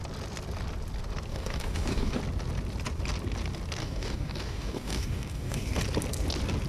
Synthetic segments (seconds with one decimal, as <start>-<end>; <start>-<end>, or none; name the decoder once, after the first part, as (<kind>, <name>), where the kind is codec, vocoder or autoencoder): 1.3-2.2 (codec, DAC); 3.8-5.8